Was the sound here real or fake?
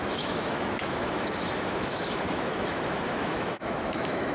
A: fake